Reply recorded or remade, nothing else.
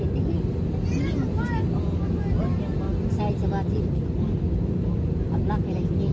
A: recorded